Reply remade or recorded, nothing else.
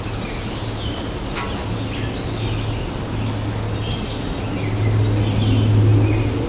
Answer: recorded